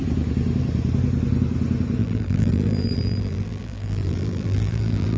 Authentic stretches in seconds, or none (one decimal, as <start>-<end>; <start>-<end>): 0.0-2.0